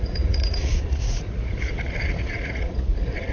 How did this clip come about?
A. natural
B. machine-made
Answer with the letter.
B